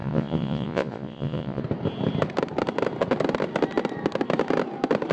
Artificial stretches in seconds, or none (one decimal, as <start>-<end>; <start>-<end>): 0.0-1.6